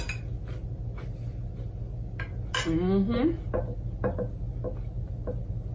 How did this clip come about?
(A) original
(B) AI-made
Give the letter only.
A